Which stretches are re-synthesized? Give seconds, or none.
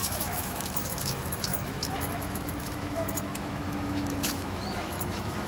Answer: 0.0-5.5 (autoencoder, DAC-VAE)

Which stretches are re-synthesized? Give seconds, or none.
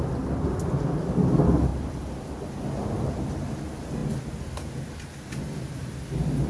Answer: none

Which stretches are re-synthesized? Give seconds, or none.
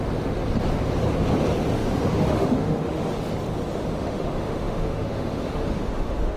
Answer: 1.7-3.1 (autoencoder, DAC-VAE); 3.8-6.4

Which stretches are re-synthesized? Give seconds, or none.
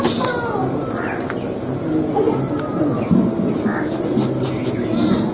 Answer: none